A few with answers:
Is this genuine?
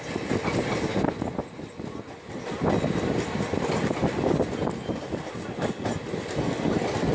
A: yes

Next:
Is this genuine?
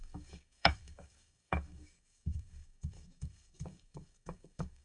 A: no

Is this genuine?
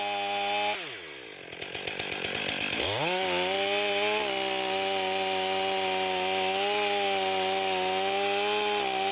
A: yes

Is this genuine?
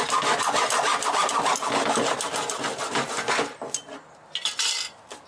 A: yes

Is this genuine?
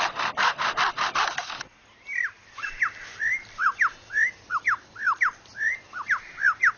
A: yes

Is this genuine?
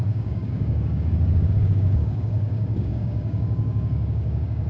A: no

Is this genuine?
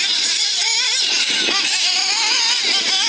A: yes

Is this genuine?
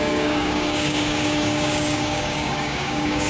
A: no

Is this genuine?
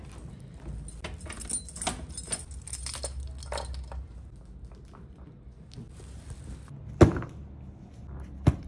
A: yes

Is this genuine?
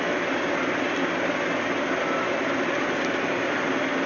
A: yes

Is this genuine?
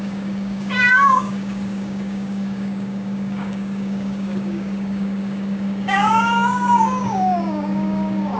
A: no